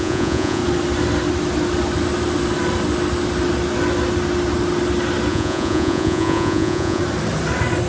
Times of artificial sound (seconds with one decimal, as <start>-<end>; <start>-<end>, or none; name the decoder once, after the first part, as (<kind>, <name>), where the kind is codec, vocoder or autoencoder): 0.0-0.6 (vocoder, Vocos); 5.3-7.0